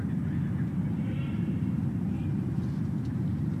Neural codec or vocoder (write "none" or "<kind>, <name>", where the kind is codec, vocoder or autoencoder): vocoder, BigVGAN v2